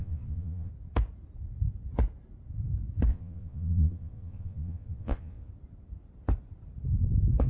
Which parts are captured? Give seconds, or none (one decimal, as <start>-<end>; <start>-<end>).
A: 0.7-3.1; 5.5-7.5